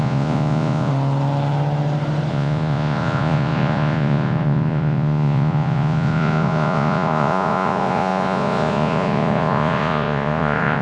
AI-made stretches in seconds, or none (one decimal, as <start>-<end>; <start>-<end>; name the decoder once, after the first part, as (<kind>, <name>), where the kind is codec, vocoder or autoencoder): 0.0-0.9 (vocoder, Vocos); 2.3-10.8